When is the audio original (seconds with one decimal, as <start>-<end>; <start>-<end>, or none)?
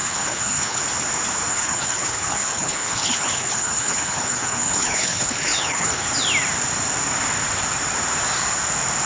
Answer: 0.8-1.5; 6.1-9.1